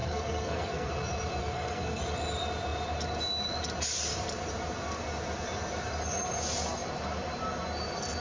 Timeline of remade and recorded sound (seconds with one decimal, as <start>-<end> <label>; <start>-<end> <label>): 0.0-0.9 remade; 0.9-1.4 recorded; 1.4-2.0 remade; 2.0-8.2 recorded